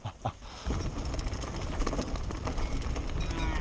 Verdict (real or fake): real